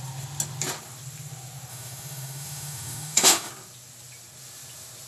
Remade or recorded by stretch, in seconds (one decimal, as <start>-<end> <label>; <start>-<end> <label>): 0.0-1.7 recorded; 1.7-3.5 remade; 3.5-5.1 recorded